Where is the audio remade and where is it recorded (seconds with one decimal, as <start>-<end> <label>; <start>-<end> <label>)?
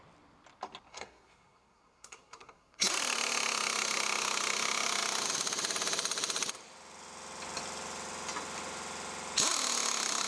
0.0-0.9 recorded; 0.9-2.9 remade; 2.9-10.3 recorded